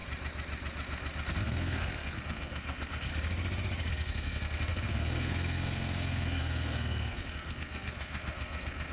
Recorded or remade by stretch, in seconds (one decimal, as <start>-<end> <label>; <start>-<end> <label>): 0.0-1.4 recorded; 1.4-3.1 remade; 3.1-3.9 recorded; 3.9-8.9 remade